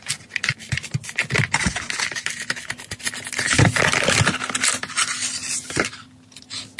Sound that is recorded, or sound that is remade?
recorded